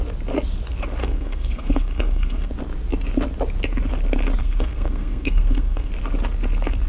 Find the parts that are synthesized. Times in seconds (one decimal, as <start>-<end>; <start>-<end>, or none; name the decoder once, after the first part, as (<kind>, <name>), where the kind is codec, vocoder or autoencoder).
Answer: 1.0-2.5 (codec, SNAC); 4.4-5.9